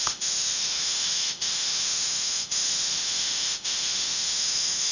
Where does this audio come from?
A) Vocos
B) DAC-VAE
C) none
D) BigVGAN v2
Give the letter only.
B